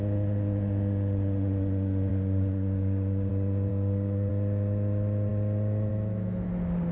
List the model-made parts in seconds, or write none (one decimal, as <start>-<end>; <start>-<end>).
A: 2.1-3.3; 3.7-4.3